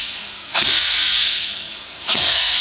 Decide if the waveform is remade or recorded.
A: remade